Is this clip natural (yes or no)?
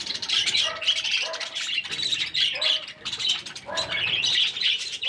no